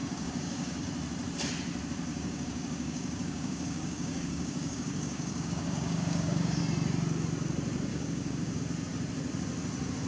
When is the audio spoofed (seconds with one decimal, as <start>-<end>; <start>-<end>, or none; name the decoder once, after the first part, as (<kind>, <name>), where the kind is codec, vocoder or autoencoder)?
0.0-0.8 (codec, DAC); 2.1-6.6; 7.9-8.6

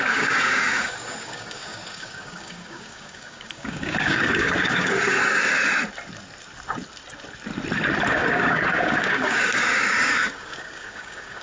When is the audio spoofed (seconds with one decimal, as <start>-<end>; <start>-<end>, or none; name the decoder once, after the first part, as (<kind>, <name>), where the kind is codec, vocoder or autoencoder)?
0.0-5.2 (codec, DAC); 8.1-11.4

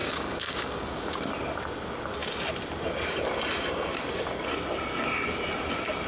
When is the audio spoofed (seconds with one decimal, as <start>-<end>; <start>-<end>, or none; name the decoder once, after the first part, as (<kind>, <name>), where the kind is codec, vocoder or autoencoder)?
0.0-1.1 (codec, DAC)